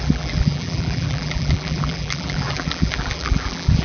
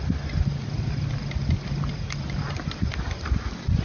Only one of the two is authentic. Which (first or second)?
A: second